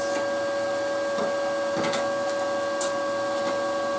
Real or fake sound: real